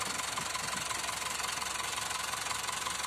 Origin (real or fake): real